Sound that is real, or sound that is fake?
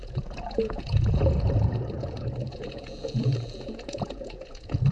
fake